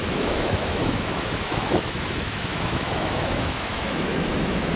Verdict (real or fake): fake